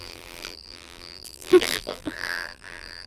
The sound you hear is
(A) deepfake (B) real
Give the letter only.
A